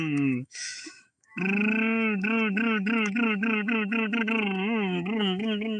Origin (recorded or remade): remade